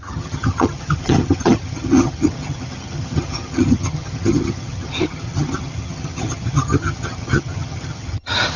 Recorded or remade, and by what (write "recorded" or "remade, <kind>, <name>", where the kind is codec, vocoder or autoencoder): remade, vocoder, HiFi-GAN